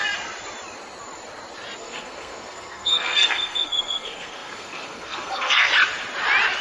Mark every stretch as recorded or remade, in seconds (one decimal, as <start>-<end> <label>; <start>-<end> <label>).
0.0-1.8 recorded; 1.8-5.7 remade; 5.7-6.6 recorded